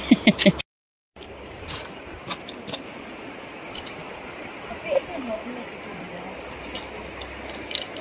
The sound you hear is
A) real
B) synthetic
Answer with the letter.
A